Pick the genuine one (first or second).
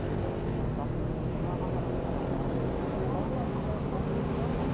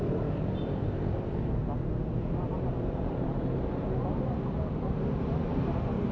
first